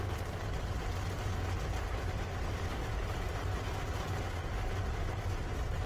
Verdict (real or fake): real